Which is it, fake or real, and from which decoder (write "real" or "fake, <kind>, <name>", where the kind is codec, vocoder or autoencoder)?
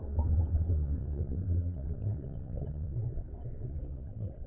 fake, vocoder, WaveNeXt